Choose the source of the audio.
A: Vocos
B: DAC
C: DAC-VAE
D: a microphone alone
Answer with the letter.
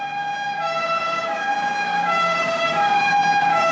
B